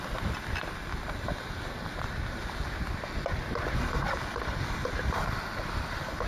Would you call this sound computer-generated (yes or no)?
no